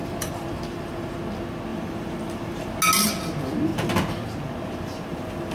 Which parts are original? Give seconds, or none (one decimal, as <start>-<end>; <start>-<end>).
1.2-1.7; 2.8-5.5

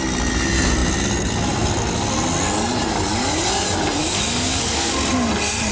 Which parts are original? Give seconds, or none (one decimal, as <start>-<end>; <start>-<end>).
0.0-4.0; 4.9-5.7

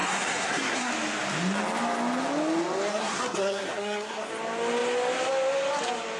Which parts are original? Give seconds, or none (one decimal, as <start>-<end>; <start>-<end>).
0.9-2.9; 4.3-6.2

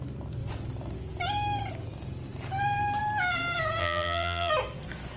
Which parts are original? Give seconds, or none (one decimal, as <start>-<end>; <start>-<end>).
0.0-3.8; 4.5-5.2

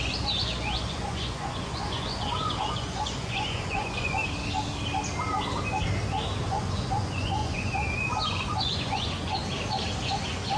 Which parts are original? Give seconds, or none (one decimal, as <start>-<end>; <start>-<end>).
4.2-6.5; 9.4-10.0

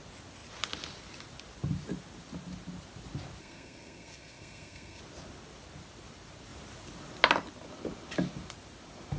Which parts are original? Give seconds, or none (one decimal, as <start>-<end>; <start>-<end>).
0.0-3.4; 5.0-9.2